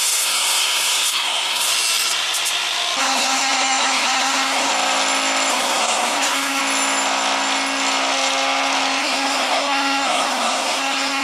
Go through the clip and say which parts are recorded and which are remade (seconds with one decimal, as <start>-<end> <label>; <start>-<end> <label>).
0.0-1.7 remade; 1.7-3.0 recorded; 3.0-4.7 remade; 4.7-5.5 recorded; 5.5-6.6 remade; 6.6-9.0 recorded; 9.0-11.2 remade